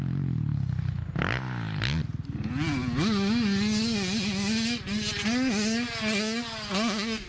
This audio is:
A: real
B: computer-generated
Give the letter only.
A